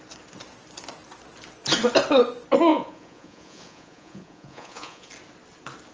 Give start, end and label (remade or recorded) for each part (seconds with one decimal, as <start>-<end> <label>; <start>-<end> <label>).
0.0-2.7 recorded; 2.7-5.1 remade; 5.1-5.9 recorded